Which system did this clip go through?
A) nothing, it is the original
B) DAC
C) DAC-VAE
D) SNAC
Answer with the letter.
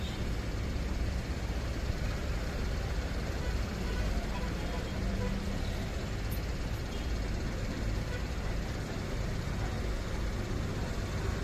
A